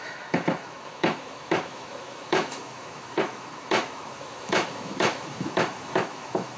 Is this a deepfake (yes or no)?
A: yes